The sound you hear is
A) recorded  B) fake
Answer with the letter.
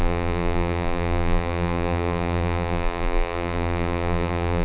B